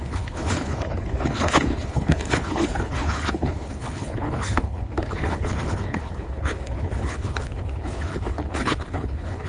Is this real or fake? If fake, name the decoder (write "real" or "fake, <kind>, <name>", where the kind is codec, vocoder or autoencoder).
fake, codec, HILCodec